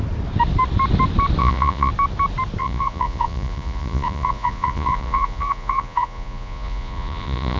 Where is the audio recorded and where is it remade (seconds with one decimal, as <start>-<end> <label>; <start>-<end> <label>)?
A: 0.0-1.4 recorded; 1.4-1.9 remade; 1.9-2.6 recorded; 2.6-7.6 remade